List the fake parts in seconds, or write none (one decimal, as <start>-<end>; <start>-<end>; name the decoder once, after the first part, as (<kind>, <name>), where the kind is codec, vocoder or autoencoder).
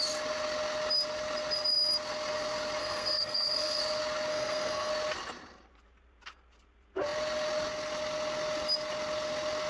2.8-3.8 (codec, SNAC); 4.3-4.9